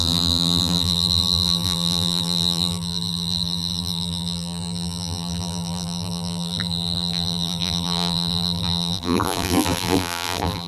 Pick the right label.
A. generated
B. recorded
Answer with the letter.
A